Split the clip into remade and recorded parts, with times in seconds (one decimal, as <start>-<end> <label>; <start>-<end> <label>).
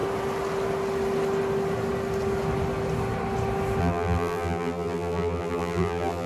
0.0-3.8 recorded; 3.8-6.3 remade